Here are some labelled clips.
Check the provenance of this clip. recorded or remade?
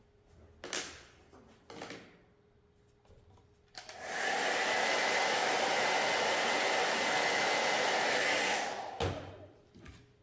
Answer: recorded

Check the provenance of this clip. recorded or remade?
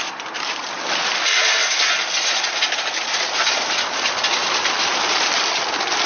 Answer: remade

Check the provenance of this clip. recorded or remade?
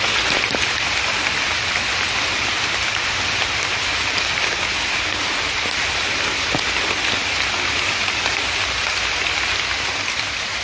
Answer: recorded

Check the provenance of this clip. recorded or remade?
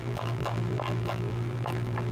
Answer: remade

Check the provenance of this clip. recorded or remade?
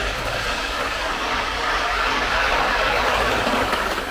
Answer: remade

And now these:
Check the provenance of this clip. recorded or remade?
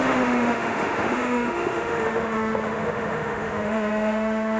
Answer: remade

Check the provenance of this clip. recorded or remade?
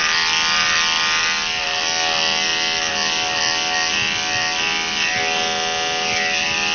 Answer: recorded